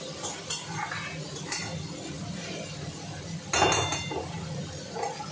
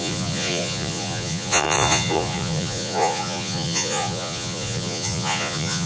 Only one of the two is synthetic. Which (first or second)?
second